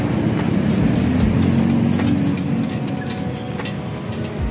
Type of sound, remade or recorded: recorded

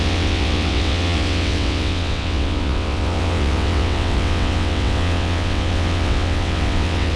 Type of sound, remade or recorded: remade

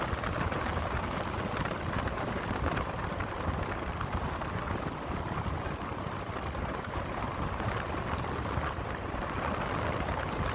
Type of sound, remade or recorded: recorded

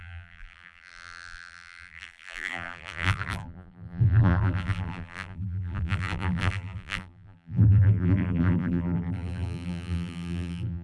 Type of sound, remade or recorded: remade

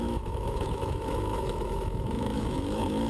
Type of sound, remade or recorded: remade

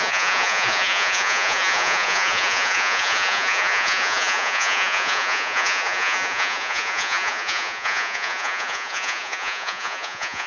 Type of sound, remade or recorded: remade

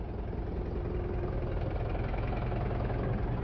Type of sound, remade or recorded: recorded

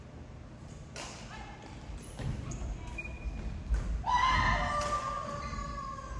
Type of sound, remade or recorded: recorded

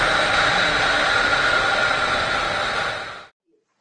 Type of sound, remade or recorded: recorded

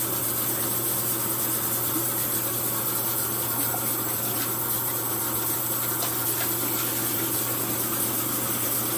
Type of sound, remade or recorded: recorded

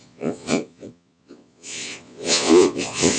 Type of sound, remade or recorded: remade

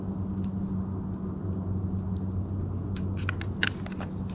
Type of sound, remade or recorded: recorded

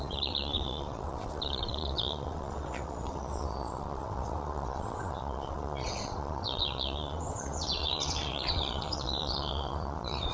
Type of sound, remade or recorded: remade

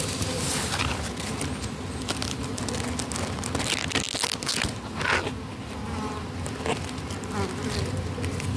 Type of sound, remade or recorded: recorded